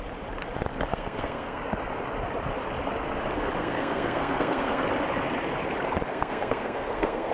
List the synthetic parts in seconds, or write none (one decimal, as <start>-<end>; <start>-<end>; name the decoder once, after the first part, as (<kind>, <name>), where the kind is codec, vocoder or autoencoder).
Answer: 0.9-1.6 (codec, SNAC); 3.6-4.8; 6.1-7.3